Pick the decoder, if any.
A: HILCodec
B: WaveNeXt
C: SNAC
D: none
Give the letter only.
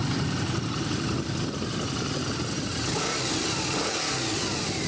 D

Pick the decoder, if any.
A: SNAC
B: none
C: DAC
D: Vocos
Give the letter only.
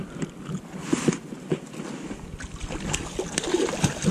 B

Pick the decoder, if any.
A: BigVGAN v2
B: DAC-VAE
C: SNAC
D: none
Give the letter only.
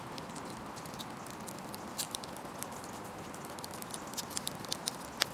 D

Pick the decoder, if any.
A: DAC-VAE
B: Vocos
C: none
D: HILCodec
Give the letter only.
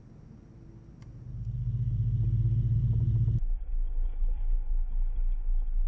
C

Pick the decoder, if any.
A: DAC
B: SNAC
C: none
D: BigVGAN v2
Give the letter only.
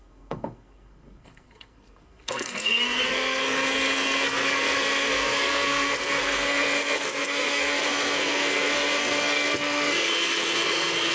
B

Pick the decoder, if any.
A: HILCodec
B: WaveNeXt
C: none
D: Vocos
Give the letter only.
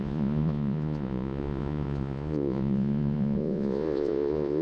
D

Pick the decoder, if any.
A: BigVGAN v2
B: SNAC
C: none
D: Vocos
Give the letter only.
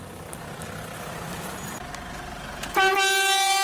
C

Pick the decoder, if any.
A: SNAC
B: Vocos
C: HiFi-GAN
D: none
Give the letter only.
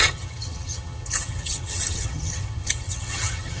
C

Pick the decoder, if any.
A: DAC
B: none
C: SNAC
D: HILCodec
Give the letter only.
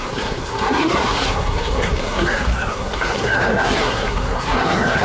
C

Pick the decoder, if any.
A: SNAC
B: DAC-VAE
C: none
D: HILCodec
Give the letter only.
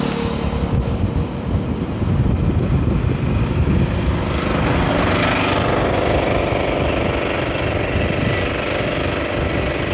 C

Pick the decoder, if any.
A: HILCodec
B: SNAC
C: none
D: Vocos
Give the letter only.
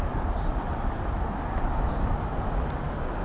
C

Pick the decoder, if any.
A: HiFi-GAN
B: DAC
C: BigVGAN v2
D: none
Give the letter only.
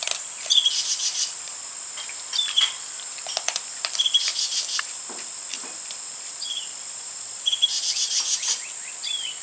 C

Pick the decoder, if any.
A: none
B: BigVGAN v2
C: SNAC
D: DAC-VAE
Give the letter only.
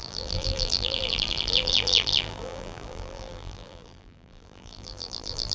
B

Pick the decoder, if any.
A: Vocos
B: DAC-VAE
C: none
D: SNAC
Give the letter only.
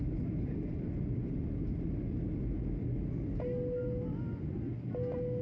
C